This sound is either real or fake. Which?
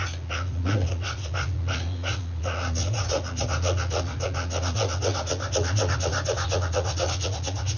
fake